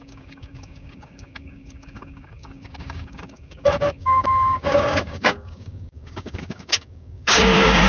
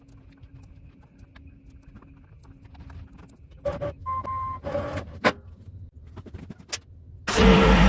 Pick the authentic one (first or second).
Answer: second